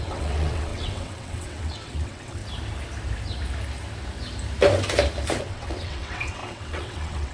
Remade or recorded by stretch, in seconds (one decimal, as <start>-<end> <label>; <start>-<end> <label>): 0.0-2.4 remade; 2.4-5.4 recorded; 5.4-7.3 remade